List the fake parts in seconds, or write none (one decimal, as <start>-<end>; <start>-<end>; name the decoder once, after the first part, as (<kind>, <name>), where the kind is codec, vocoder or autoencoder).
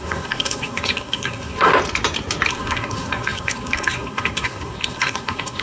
0.0-1.7 (codec, SNAC); 2.5-5.6